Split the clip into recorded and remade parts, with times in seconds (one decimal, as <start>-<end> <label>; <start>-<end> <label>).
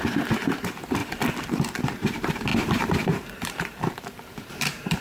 0.0-1.0 remade; 1.0-1.8 recorded; 1.8-5.0 remade